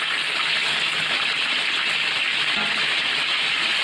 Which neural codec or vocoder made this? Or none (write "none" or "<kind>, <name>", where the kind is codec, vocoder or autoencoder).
none